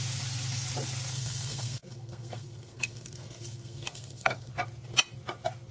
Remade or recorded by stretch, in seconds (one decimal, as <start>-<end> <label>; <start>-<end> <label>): 0.0-1.1 recorded; 1.1-4.5 remade; 4.5-5.7 recorded